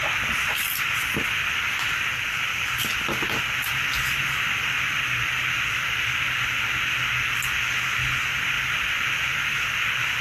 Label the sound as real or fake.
real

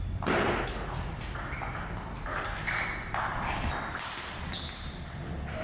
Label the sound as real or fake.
real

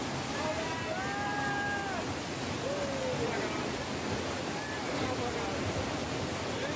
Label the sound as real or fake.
real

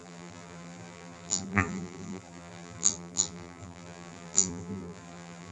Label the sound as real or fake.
fake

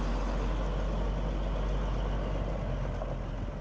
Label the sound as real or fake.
real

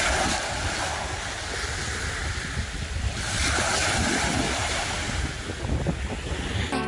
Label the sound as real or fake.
real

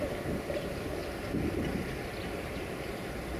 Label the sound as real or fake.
real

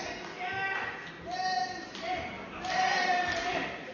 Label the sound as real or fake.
real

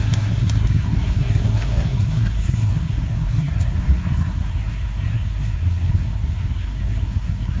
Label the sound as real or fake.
fake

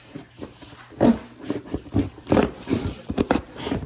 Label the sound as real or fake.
fake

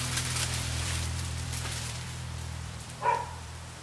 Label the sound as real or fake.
fake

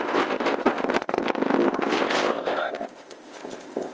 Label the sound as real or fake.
fake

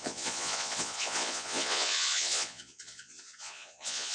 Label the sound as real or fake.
fake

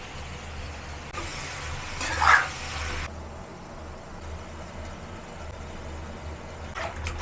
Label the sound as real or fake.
real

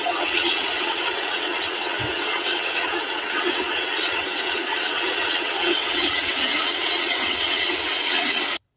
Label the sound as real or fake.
fake